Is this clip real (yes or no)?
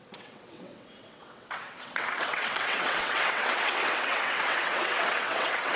no